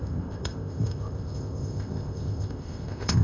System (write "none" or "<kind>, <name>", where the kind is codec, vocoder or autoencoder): codec, ZipCodec